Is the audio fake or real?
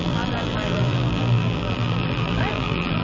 fake